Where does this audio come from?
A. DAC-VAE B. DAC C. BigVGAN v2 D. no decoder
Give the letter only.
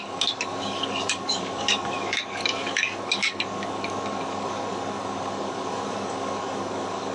B